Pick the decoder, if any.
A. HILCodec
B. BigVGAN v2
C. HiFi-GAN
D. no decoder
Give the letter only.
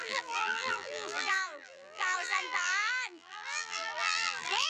B